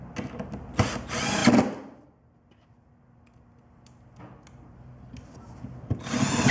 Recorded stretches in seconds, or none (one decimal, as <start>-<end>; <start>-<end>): 0.0-6.5